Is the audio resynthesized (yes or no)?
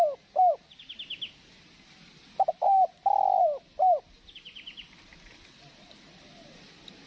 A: no